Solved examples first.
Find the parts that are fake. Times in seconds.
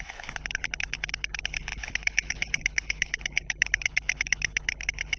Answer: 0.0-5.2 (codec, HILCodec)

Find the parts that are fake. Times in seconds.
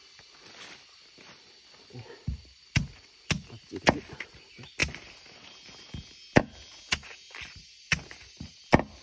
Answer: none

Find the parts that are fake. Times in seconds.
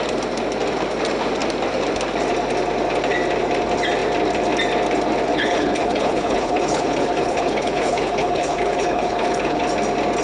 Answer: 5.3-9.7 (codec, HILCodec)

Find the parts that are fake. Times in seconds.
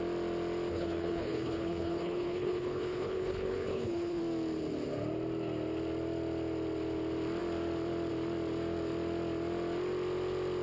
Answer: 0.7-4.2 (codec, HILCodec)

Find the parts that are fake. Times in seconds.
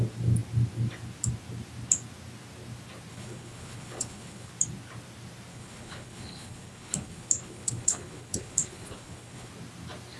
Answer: 3.1-4.5 (codec, HILCodec); 5.5-9.5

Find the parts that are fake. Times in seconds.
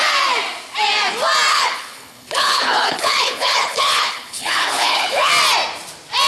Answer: 1.5-5.3 (codec, HILCodec)